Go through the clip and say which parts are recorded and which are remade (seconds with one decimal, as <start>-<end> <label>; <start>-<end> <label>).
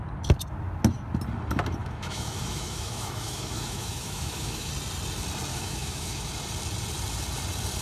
0.0-1.8 recorded; 1.8-4.7 remade; 4.7-5.5 recorded; 5.5-6.3 remade; 6.3-7.8 recorded